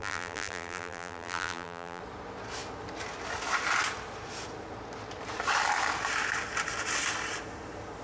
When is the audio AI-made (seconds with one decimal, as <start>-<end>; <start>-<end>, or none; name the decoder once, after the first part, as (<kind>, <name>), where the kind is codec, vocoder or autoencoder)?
0.0-2.0 (vocoder, BigVGAN v2)

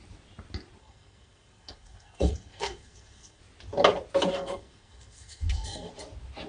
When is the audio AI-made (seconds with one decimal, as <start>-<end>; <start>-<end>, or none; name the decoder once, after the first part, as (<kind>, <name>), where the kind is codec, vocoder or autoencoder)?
0.8-3.4 (codec, SNAC); 4.3-5.9

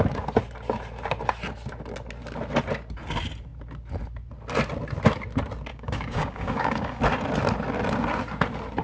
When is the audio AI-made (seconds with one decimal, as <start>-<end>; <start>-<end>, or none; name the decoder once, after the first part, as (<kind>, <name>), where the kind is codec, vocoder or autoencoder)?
5.7-7.0 (codec, DAC)

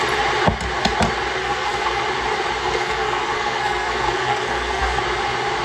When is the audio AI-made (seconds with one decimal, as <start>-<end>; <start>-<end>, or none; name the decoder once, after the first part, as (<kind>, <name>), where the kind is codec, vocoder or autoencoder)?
1.4-2.0 (codec, SNAC); 2.6-5.0